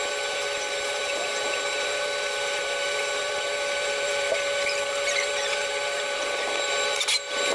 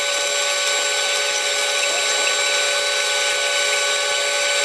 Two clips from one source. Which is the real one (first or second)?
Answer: second